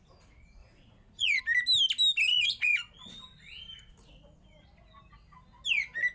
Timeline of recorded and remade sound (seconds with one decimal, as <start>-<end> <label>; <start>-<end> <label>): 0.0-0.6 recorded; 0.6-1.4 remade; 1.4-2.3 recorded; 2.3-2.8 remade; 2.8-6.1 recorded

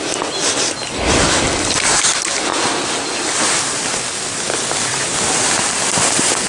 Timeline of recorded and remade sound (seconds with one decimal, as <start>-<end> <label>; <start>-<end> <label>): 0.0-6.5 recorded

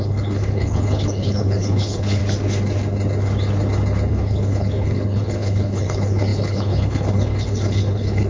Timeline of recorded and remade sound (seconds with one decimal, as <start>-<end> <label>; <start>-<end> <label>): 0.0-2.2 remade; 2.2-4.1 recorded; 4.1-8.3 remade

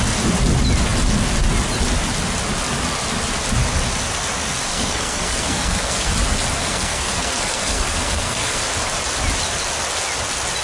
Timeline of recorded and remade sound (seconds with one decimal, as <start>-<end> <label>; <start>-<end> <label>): 0.0-4.7 recorded; 4.7-6.1 remade; 6.1-6.6 recorded; 6.6-8.6 remade; 8.6-10.6 recorded

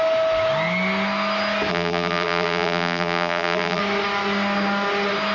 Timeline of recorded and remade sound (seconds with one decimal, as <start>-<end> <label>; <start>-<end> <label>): 0.0-1.7 recorded; 1.7-3.8 remade; 3.8-5.3 recorded

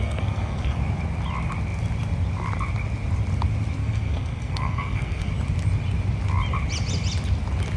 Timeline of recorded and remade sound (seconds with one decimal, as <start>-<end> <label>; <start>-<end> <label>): 0.0-0.8 remade; 0.8-3.8 recorded; 3.8-5.3 remade; 5.3-7.8 recorded